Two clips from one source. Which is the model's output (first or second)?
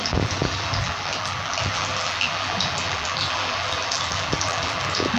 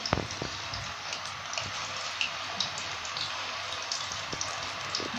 first